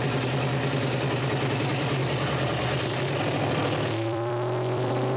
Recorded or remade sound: remade